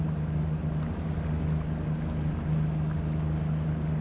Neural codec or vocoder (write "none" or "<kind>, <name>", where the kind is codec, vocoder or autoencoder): none